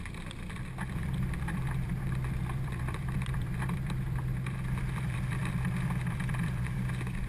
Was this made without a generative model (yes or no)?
no